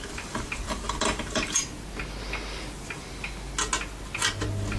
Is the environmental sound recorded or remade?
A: recorded